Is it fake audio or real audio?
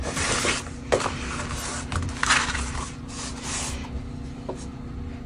real